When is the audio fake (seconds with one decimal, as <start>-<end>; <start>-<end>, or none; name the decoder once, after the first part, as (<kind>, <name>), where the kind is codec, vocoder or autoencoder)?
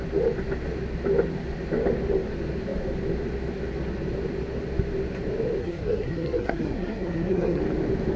5.6-7.6 (codec, SNAC)